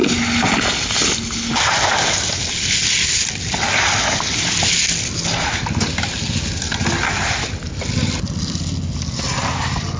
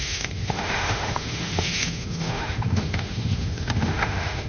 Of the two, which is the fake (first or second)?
second